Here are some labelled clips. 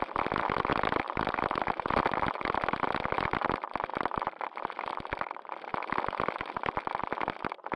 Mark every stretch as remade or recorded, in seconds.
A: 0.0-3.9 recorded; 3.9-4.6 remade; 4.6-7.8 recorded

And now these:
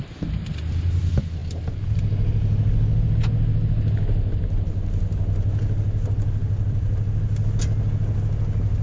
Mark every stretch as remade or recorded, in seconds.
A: 0.0-8.8 recorded

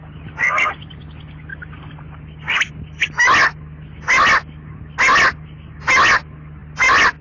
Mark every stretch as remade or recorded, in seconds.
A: 0.0-7.2 recorded

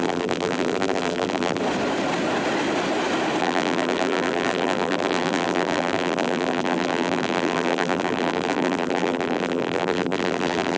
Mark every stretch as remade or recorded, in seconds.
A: 0.0-1.6 remade; 1.6-3.4 recorded; 3.4-10.8 remade